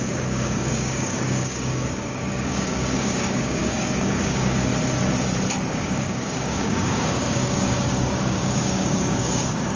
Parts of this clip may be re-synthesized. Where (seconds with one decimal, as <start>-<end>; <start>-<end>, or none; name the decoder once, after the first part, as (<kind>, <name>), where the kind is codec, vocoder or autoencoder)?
0.0-4.7 (codec, DAC); 5.7-9.8